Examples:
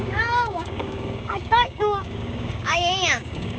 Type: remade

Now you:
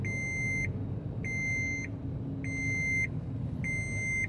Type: recorded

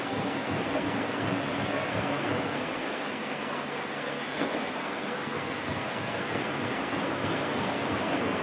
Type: remade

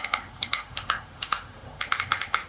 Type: remade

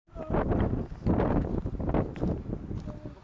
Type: recorded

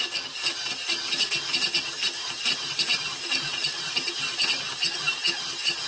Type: recorded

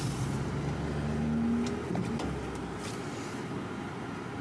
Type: recorded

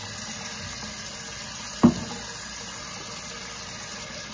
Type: recorded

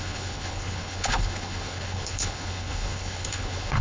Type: remade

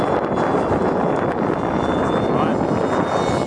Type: recorded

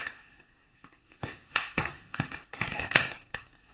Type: remade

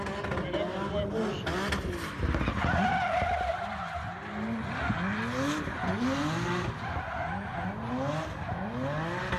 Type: recorded